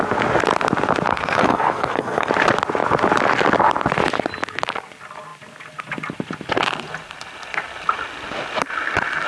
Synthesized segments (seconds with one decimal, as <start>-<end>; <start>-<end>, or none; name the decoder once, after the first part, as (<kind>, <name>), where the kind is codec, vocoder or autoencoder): 1.1-2.3 (codec, SNAC)